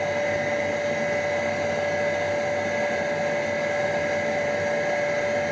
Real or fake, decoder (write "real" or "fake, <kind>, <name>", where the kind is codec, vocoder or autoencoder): real